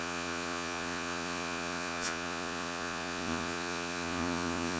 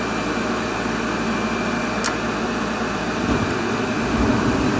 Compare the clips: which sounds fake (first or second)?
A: first